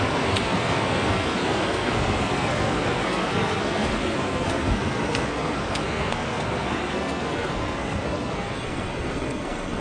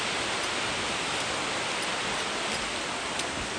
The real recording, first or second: second